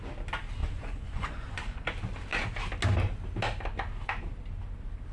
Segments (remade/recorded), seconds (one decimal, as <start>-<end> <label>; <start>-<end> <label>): 0.0-0.6 recorded; 0.6-1.8 remade; 1.8-5.1 recorded